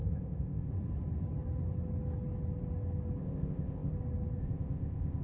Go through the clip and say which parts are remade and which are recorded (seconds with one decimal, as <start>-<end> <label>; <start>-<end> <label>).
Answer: 0.0-0.7 remade; 0.7-3.2 recorded; 3.2-3.9 remade; 3.9-4.4 recorded; 4.4-5.2 remade